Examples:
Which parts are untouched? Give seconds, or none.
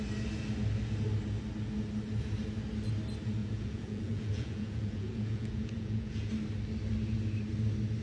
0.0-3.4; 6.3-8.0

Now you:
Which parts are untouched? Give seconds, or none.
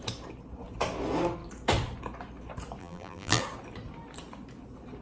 0.0-2.8; 3.4-5.0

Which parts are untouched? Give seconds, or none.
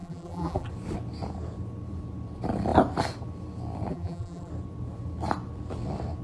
0.7-3.9; 4.5-6.2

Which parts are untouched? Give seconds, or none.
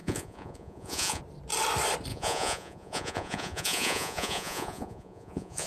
1.2-2.1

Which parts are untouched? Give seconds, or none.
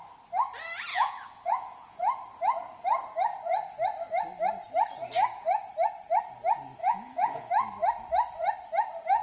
0.0-0.9; 2.0-6.8; 7.5-9.2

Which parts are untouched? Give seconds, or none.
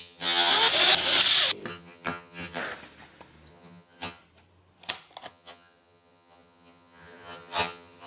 0.5-1.7; 2.6-3.5; 4.2-5.3